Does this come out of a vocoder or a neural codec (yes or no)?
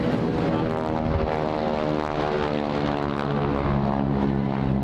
no